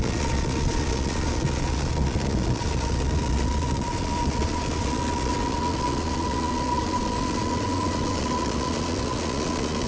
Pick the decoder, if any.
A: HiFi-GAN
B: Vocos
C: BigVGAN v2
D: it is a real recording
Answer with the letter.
B